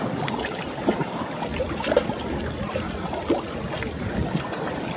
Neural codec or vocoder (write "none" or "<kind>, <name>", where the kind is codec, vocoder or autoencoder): none